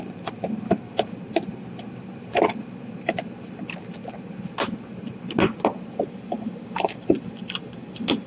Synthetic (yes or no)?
no